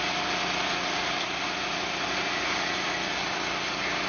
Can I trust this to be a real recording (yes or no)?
yes